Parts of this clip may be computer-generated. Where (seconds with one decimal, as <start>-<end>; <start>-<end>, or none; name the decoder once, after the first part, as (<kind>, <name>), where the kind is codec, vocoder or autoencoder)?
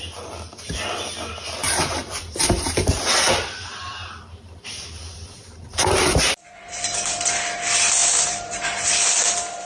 1.6-6.8 (vocoder, BigVGAN v2); 8.0-8.9